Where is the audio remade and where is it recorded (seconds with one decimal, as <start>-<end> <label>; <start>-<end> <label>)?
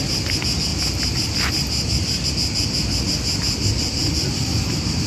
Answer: 0.0-5.1 recorded